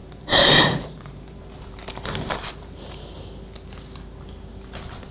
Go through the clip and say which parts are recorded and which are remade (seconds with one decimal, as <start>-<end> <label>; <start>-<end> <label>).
0.0-3.1 remade; 3.1-5.1 recorded